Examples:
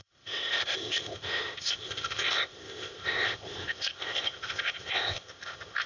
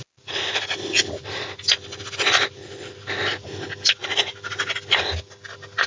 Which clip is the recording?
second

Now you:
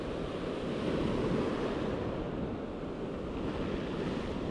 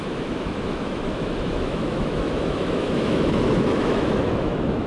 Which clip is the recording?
first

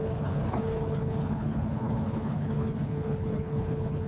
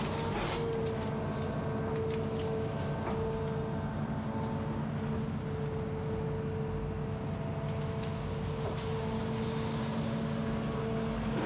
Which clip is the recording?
second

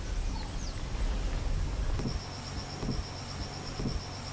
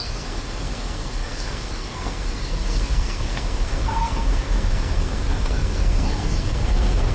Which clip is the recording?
first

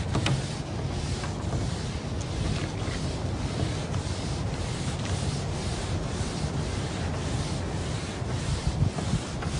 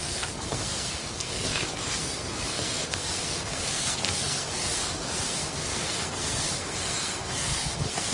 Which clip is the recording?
first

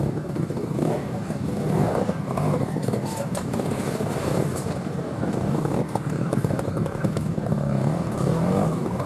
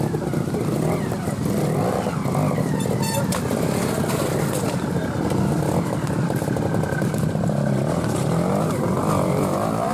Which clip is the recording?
second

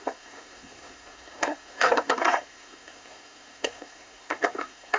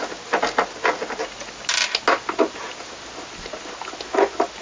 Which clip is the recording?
second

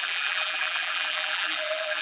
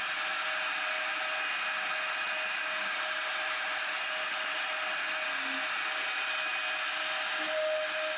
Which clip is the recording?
second